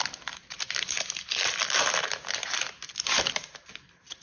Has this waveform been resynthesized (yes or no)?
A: no